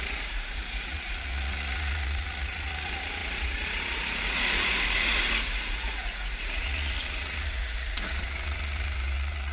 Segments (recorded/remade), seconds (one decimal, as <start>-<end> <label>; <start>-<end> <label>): 0.0-9.5 remade